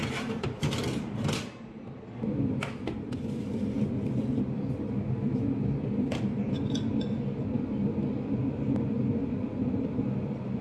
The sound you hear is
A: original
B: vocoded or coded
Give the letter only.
A